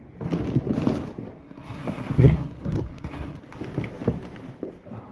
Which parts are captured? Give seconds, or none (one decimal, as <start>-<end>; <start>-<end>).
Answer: 0.0-1.4; 3.4-5.1